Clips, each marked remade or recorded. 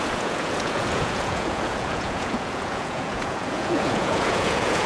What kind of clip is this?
remade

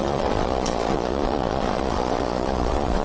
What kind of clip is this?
remade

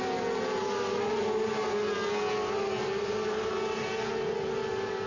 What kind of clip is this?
recorded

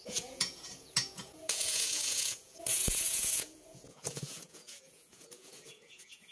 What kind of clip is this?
remade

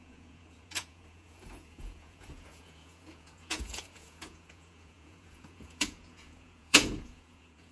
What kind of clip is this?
remade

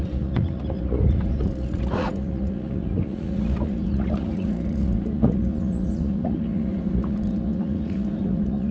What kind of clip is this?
remade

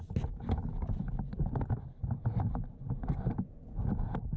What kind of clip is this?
recorded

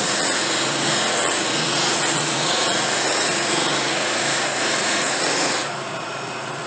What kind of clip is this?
remade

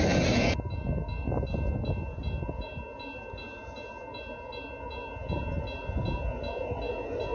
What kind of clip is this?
recorded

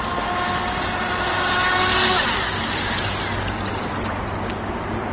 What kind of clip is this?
recorded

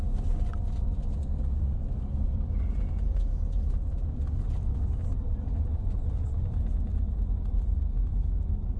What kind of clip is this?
recorded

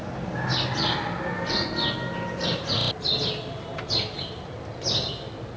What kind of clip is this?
recorded